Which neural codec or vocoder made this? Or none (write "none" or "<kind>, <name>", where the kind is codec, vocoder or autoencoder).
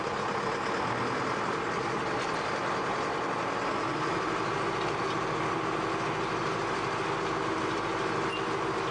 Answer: none